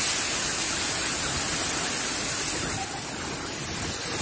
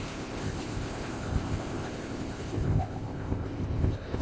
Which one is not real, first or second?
second